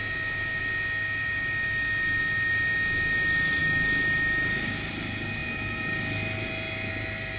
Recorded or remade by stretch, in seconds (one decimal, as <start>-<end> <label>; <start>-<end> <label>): 0.0-7.4 recorded